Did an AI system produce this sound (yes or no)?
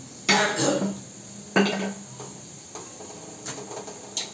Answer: no